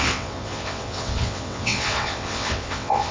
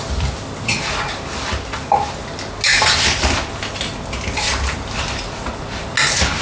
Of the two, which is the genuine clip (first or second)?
second